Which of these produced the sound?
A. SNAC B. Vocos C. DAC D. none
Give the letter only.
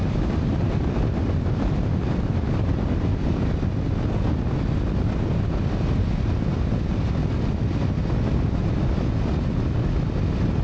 D